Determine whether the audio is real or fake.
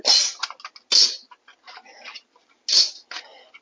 real